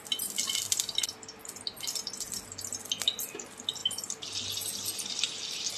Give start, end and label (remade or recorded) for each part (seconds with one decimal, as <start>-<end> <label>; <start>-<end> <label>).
0.0-5.8 recorded